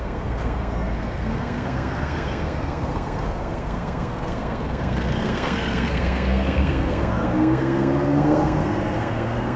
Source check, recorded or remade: remade